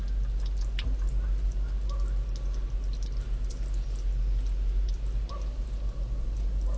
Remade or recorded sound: recorded